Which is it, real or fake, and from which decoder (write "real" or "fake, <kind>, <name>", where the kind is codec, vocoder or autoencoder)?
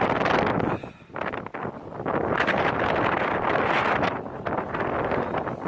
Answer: real